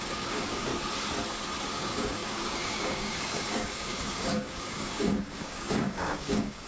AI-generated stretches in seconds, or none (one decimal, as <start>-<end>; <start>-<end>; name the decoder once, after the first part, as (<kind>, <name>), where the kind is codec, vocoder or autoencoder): 0.0-0.7 (codec, DAC); 1.7-6.7